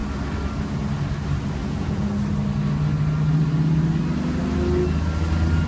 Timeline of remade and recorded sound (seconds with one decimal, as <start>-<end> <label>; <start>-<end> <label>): 0.0-1.6 recorded; 1.6-2.1 remade; 2.1-5.7 recorded